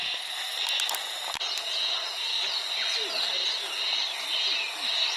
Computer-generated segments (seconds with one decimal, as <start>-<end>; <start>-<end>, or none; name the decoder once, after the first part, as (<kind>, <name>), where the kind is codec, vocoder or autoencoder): none

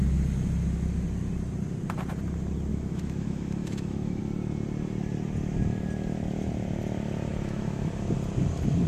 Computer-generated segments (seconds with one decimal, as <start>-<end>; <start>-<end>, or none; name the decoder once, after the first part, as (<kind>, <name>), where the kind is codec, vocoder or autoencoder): 2.7-4.2 (autoencoder, DAC-VAE); 7.3-7.9

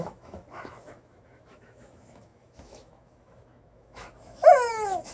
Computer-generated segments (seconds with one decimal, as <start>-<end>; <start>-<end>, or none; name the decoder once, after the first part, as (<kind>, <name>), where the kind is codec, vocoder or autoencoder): 0.0-5.1 (autoencoder, DAC-VAE)

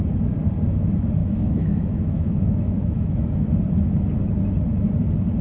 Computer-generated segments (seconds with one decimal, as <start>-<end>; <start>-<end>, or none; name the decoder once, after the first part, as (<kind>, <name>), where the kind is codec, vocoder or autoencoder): 1.2-3.4 (autoencoder, DAC-VAE)

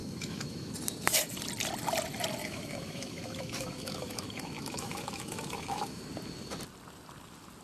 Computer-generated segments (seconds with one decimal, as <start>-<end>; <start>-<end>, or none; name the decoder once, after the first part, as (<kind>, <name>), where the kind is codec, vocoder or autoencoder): 0.0-0.7 (autoencoder, DAC-VAE); 2.4-6.0